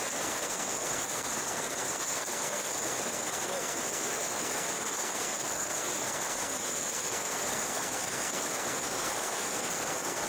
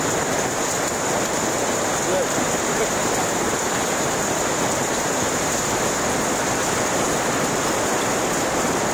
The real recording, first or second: second